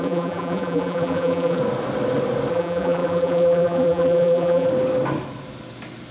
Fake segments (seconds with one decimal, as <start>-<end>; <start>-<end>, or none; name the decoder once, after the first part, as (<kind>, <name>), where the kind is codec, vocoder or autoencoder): 0.0-1.6 (vocoder, BigVGAN v2); 2.5-4.7